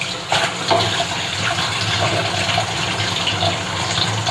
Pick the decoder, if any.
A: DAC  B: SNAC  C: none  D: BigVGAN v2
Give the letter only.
C